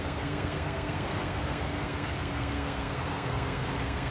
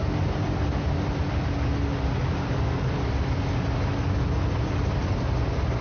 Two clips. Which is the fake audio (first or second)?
first